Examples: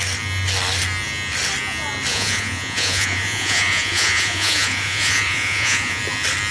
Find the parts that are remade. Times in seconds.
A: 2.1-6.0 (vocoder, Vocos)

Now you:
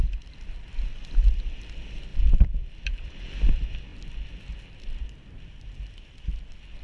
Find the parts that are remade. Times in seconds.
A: 2.1-3.2 (vocoder, BigVGAN v2)

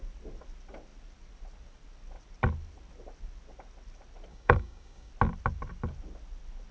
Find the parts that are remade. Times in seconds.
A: 4.3-5.1 (codec, DAC)

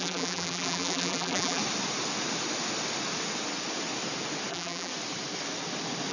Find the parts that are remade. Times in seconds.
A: 0.0-1.6 (vocoder, BigVGAN v2); 4.5-4.9